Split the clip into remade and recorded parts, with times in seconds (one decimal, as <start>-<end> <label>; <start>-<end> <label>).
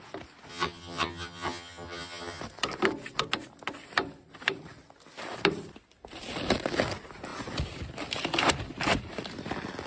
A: 0.0-0.5 recorded; 0.5-2.4 remade; 2.4-9.9 recorded